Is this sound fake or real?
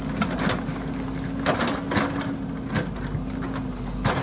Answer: real